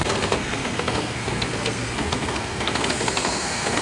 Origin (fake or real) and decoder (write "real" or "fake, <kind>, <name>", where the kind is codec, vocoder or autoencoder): fake, codec, SNAC